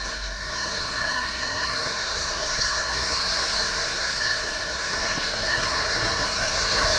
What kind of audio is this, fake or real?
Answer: fake